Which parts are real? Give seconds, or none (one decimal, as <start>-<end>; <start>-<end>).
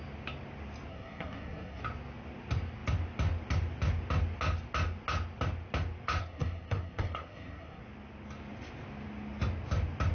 0.0-0.9; 1.8-6.2; 7.8-10.1